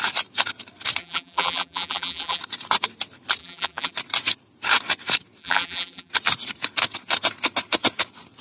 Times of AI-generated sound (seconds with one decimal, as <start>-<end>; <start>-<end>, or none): 1.0-2.4; 3.4-3.9; 5.4-6.1